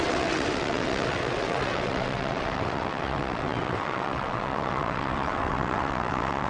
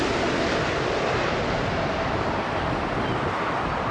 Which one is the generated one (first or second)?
first